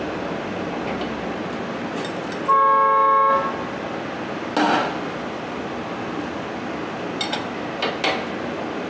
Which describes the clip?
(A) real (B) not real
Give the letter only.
A